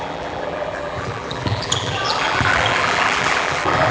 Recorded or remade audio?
remade